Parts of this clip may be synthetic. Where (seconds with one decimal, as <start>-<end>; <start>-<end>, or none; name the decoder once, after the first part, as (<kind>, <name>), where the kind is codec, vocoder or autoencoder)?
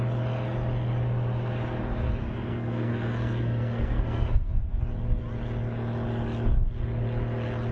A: 2.2-4.8 (codec, SNAC)